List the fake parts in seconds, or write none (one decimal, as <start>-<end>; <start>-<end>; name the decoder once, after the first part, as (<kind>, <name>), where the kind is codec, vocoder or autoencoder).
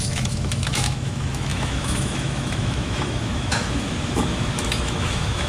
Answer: 0.0-5.5 (autoencoder, DAC-VAE)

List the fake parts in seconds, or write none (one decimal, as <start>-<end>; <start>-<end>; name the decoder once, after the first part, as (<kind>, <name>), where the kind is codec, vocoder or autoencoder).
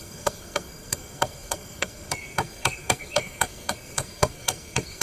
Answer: 0.0-5.0 (codec, SNAC)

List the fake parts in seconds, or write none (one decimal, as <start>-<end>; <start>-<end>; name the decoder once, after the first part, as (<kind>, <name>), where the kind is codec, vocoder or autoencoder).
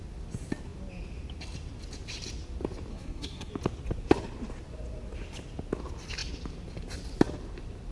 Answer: 2.9-3.5 (codec, SNAC)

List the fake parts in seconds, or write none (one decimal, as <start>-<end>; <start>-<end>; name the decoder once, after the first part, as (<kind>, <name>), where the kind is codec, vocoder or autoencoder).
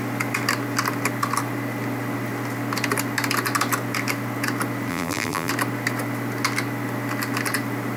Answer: 4.9-5.5 (vocoder, BigVGAN v2)